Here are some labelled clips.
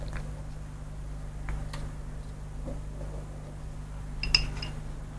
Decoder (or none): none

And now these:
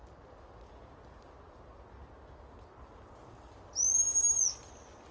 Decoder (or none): none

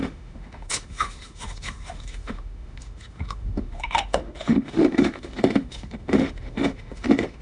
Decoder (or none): autoencoder, DAC-VAE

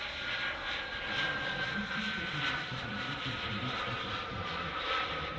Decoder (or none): vocoder, BigVGAN v2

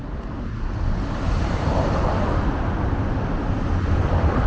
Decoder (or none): vocoder, BigVGAN v2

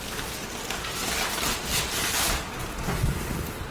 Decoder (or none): none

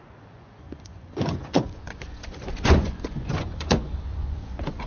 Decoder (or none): vocoder, Vocos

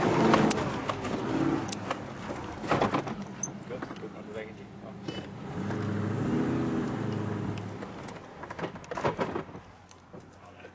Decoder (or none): none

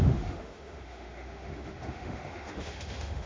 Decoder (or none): autoencoder, DAC-VAE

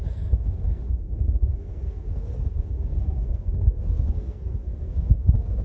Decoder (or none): codec, SNAC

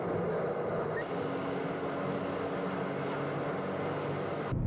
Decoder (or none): none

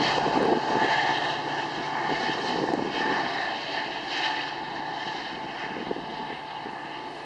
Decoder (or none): none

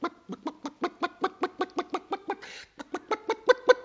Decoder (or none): none